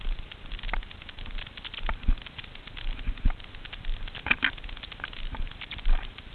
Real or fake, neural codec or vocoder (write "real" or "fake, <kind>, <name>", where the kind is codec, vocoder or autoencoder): real